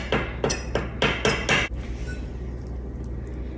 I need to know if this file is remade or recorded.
recorded